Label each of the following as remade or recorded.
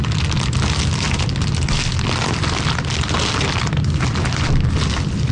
recorded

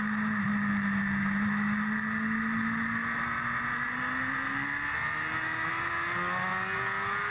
recorded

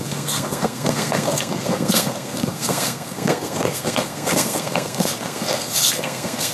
remade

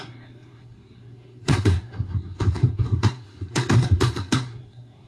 remade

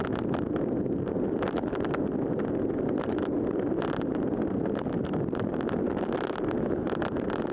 recorded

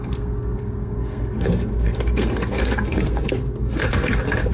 remade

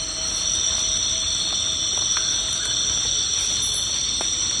recorded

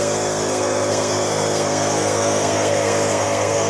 remade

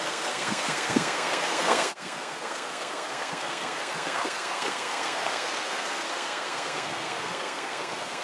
remade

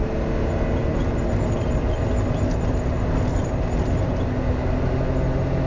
recorded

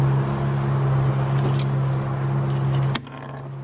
recorded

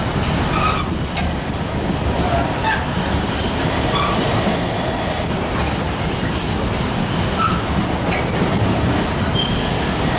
recorded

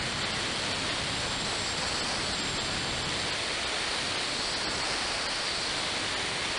recorded